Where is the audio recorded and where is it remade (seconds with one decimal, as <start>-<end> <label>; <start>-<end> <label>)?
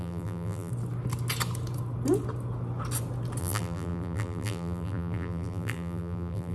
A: 0.0-0.7 remade; 0.7-3.4 recorded; 3.4-6.5 remade